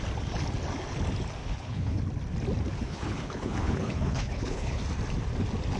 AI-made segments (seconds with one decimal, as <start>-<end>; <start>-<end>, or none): 1.4-2.0; 2.8-4.8